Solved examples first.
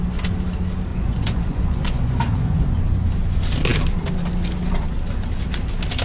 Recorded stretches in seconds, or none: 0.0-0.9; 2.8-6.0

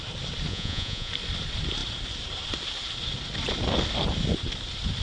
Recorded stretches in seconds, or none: 0.0-0.5; 1.1-5.0

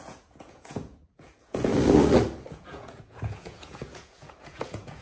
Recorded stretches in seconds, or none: 1.7-2.5

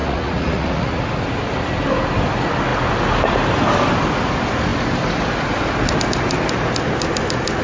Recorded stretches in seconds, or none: 1.0-7.6

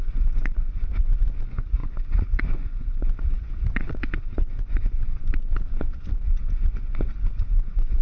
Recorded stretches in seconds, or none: 5.2-7.3

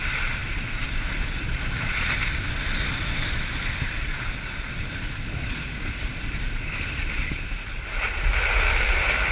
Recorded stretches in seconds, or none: 0.0-9.3